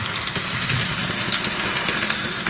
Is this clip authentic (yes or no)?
yes